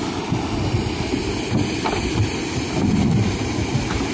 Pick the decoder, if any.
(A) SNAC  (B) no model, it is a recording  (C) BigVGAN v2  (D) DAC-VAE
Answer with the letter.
B